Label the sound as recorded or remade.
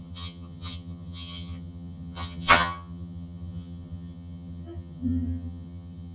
remade